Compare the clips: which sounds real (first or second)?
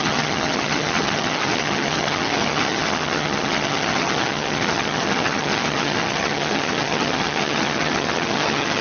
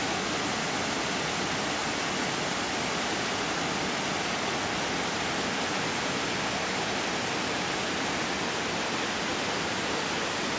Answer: second